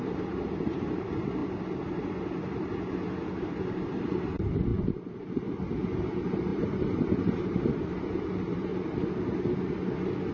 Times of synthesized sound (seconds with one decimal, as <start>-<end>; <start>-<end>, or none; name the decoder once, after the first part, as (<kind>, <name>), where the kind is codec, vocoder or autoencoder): 0.0-1.4 (vocoder, BigVGAN v2); 2.0-8.7